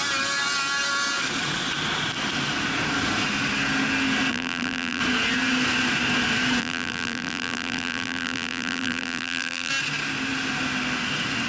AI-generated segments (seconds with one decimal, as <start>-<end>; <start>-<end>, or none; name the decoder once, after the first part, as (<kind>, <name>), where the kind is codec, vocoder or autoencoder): 4.3-5.0 (vocoder, BigVGAN v2); 6.6-9.7